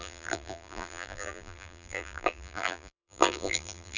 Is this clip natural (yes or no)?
no